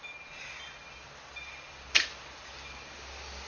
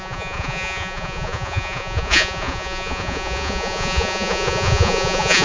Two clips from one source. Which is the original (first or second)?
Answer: first